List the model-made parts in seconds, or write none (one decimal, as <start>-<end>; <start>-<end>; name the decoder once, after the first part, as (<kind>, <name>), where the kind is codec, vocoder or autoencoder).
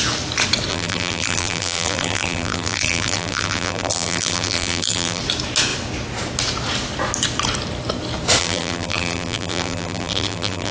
0.7-5.2 (vocoder, BigVGAN v2); 8.4-10.7